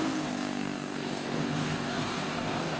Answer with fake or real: fake